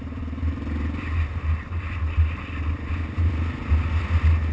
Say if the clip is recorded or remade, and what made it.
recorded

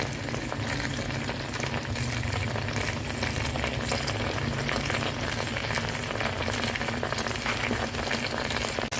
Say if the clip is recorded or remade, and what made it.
recorded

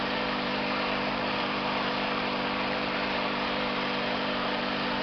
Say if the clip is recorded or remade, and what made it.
remade, vocoder, BigVGAN v2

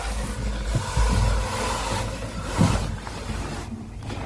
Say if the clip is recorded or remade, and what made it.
recorded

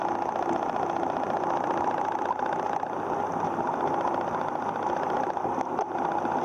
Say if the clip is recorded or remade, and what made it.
recorded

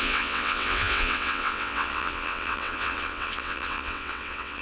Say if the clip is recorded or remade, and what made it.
remade, vocoder, WaveNeXt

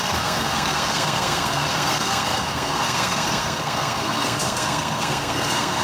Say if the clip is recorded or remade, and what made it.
remade, codec, SNAC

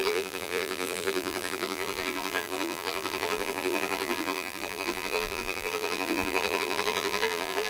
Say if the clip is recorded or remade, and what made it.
remade, vocoder, BigVGAN v2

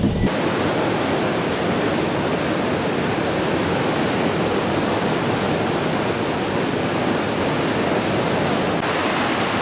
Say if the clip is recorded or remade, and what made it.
recorded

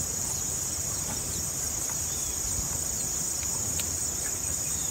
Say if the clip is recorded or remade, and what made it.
recorded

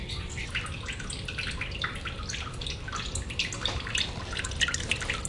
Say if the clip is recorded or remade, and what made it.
recorded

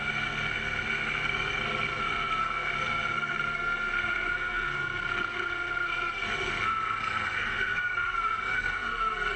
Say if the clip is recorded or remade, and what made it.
remade, codec, SNAC